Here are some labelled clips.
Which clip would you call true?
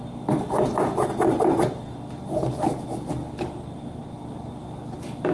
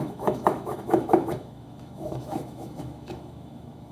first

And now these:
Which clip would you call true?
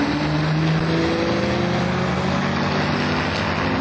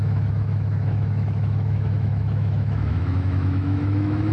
first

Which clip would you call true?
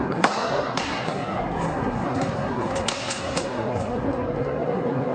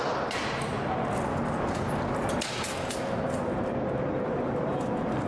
second